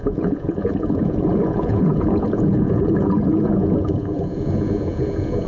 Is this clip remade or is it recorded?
remade